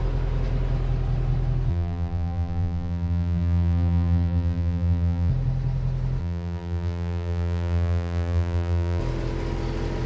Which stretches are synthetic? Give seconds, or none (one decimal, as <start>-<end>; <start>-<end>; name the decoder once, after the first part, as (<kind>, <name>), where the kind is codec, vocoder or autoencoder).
1.7-5.3 (vocoder, BigVGAN v2); 6.2-9.0